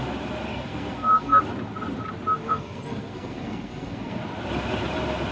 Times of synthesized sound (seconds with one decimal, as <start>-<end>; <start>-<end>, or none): 0.5-1.4; 2.5-4.2